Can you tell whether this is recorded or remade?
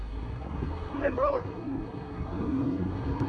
remade